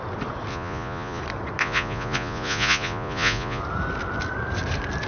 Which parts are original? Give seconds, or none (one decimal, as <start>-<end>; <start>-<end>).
0.0-0.5; 1.2-1.6; 3.6-5.1